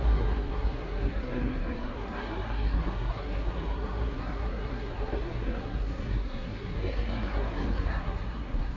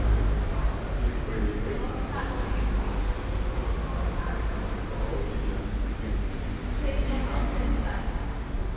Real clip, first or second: second